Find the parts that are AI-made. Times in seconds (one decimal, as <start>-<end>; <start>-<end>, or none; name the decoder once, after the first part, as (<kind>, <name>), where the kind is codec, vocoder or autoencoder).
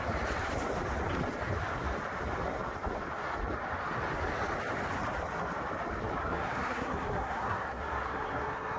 6.2-8.8 (codec, SNAC)